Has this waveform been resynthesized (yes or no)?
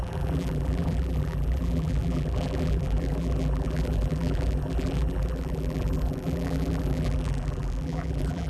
yes